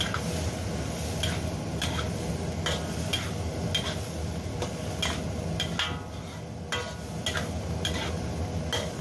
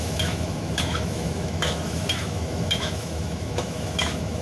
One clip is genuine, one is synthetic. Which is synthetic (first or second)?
second